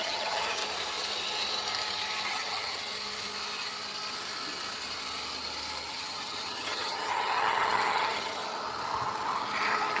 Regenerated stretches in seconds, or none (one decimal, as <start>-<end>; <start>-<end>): 0.0-0.6; 2.3-2.9; 5.9-8.4